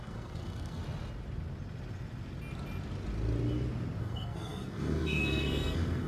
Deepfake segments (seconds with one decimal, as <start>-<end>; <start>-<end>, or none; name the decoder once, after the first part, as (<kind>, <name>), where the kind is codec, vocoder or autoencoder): 0.0-0.8 (codec, SNAC); 4.0-6.1